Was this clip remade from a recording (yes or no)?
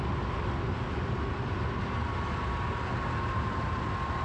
no